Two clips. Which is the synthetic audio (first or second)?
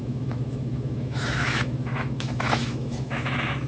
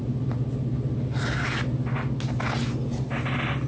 first